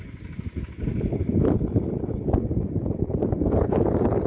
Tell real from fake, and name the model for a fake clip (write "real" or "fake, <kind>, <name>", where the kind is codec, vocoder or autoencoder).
real